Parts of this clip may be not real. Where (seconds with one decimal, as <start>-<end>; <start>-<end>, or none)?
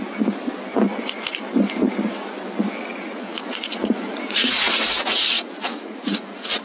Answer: 2.9-6.6